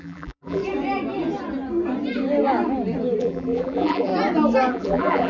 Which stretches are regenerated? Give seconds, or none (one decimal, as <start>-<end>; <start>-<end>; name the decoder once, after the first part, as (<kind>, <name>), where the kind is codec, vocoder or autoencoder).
0.0-0.6 (vocoder, BigVGAN v2); 3.2-4.1; 4.7-5.3